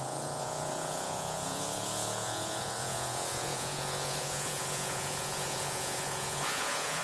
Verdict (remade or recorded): remade